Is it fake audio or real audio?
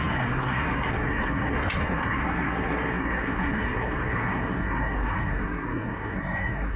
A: fake